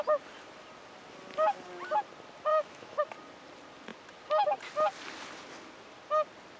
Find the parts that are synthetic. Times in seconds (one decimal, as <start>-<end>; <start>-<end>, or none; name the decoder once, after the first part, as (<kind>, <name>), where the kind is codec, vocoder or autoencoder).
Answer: 2.5-3.0 (autoencoder, DAC-VAE)